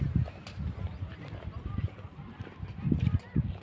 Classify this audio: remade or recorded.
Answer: recorded